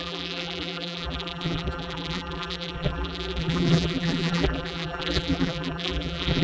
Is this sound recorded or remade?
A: remade